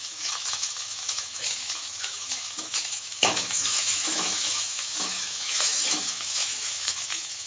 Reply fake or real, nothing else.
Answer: fake